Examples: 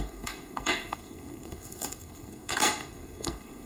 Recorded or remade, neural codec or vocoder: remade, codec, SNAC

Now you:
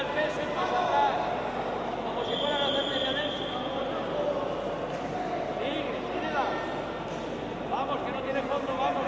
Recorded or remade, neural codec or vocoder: recorded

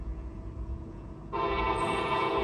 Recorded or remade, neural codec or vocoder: remade, vocoder, Vocos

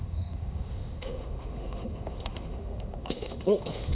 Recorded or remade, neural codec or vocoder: remade, autoencoder, DAC-VAE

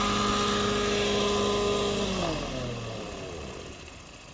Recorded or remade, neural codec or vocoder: recorded